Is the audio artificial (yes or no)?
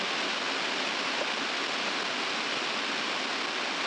no